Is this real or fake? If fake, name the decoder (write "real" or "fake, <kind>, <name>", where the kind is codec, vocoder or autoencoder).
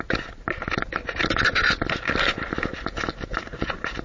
real